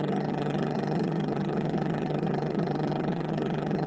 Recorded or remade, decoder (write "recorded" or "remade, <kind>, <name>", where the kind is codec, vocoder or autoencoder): remade, vocoder, HiFi-GAN